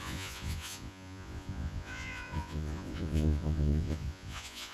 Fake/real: fake